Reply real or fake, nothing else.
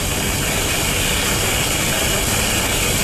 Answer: fake